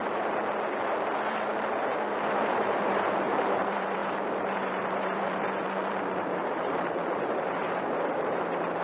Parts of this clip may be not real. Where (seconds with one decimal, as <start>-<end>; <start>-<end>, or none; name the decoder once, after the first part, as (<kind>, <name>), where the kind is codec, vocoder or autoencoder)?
2.1-8.8 (vocoder, BigVGAN v2)